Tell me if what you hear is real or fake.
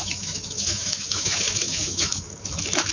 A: fake